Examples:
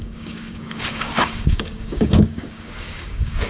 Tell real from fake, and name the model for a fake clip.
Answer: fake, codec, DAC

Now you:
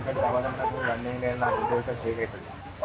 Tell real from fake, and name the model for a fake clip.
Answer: fake, autoencoder, DAC-VAE